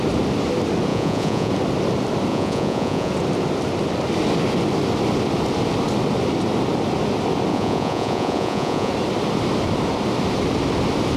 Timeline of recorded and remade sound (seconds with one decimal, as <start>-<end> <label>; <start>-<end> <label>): 0.0-0.9 recorded; 0.9-1.5 remade; 1.5-2.3 recorded; 2.3-3.1 remade; 3.1-7.5 recorded; 7.5-8.9 remade; 8.9-11.2 recorded